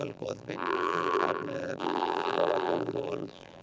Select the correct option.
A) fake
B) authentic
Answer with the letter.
A